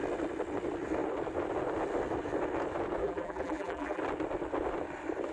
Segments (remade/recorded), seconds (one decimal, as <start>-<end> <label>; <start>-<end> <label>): 0.0-3.0 recorded; 3.0-4.0 remade; 4.0-5.3 recorded